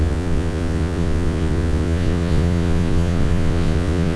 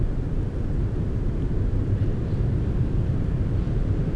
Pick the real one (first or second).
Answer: second